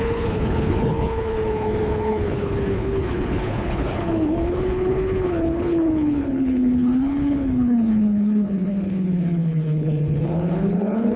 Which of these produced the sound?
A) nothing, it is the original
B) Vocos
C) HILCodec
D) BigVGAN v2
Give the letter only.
C